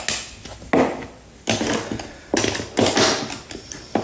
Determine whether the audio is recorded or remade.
recorded